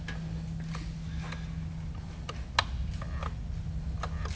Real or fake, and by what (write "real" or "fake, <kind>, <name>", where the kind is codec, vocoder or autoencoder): real